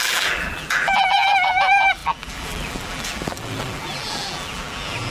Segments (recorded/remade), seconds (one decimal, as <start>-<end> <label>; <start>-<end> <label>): 0.0-5.1 remade

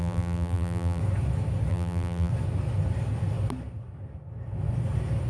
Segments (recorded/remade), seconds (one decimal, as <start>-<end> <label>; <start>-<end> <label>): 0.0-1.0 remade; 1.0-1.7 recorded; 1.7-2.3 remade; 2.3-5.3 recorded

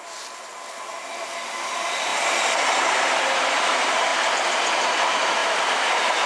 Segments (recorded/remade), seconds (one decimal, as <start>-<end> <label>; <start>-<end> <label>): 0.0-0.5 remade; 0.5-1.7 recorded; 1.7-4.1 remade; 4.1-4.9 recorded; 4.9-6.3 remade

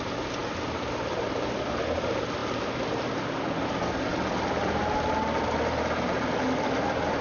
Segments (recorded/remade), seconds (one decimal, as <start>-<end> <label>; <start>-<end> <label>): 0.0-4.1 recorded; 4.1-4.8 remade; 4.8-7.2 recorded

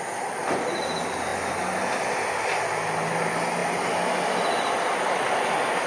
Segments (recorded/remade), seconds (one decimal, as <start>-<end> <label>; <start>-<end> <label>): 0.0-5.9 recorded

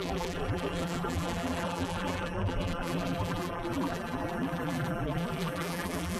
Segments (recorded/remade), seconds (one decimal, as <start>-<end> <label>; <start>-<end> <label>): 0.0-6.2 remade

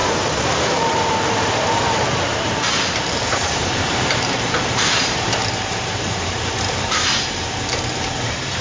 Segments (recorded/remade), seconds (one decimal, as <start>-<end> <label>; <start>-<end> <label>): 0.0-8.6 remade

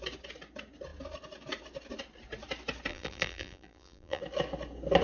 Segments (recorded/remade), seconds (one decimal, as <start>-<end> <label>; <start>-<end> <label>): 0.0-2.9 recorded; 2.9-4.2 remade; 4.2-5.0 recorded